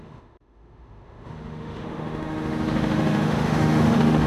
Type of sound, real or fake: fake